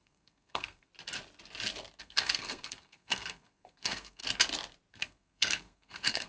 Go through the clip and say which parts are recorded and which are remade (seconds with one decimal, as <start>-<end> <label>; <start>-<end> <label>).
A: 0.0-0.9 remade; 0.9-2.0 recorded; 2.0-4.2 remade; 4.2-4.9 recorded; 4.9-6.3 remade